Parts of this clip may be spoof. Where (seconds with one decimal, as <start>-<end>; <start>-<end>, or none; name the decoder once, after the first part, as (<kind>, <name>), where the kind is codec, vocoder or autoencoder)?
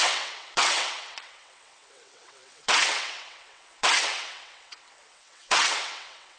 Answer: 0.0-6.4 (vocoder, WaveNeXt)